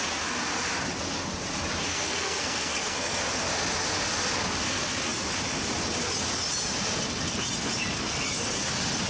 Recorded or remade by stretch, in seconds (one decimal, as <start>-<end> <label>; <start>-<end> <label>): 0.0-1.9 recorded; 1.9-3.2 remade; 3.2-9.1 recorded